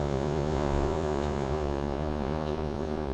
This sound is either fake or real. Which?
fake